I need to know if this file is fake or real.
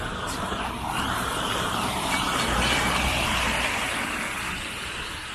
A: fake